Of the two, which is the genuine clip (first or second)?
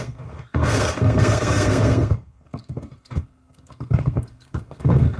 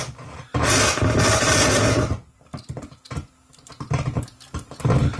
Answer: second